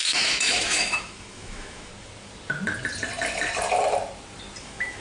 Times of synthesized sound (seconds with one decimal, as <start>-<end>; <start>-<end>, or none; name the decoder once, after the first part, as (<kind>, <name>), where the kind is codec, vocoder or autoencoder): 0.0-1.9 (autoencoder, DAC-VAE); 4.6-5.0